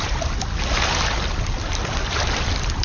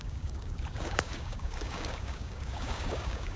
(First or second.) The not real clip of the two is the second